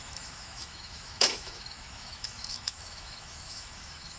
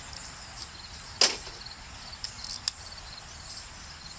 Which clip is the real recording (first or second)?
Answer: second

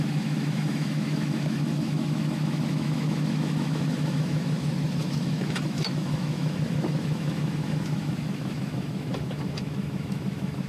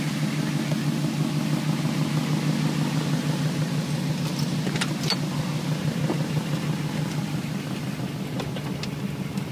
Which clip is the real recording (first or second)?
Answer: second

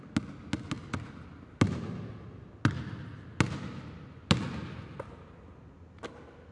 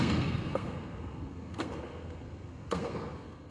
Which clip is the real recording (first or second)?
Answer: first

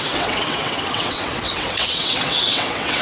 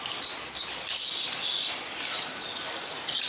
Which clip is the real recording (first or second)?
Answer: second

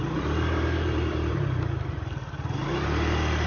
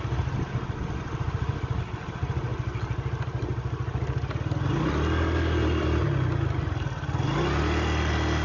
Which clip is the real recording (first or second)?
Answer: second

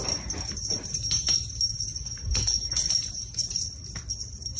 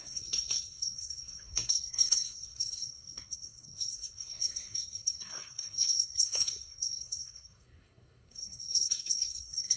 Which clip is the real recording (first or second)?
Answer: first